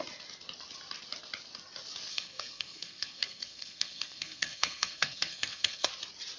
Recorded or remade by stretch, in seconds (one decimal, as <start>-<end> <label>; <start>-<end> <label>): 0.0-2.1 recorded; 2.1-5.9 remade; 5.9-6.4 recorded